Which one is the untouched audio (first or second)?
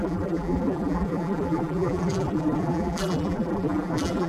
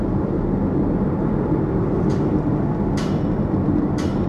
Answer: second